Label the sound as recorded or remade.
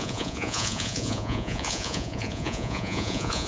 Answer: remade